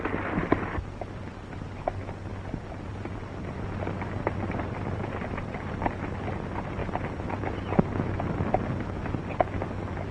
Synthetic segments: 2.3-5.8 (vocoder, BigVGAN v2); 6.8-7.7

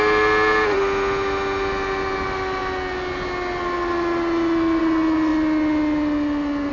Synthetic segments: none

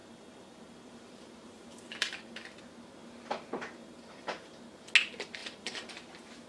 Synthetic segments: 0.0-2.6 (vocoder, BigVGAN v2); 3.8-4.5; 5.4-5.9

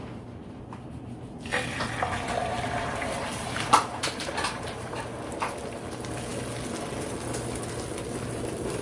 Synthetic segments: 2.4-5.1 (vocoder, BigVGAN v2)

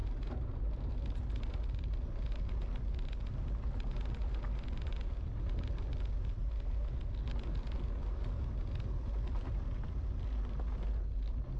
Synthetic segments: 0.0-0.9 (vocoder, BigVGAN v2)